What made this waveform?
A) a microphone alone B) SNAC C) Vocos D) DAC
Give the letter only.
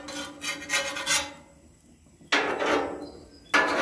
A